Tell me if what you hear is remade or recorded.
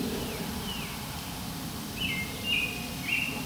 recorded